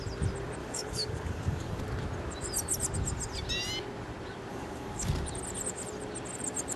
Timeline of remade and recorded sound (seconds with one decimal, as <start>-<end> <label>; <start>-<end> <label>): 0.0-0.6 recorded; 0.6-1.8 remade; 1.8-4.5 recorded; 4.5-5.1 remade; 5.1-6.8 recorded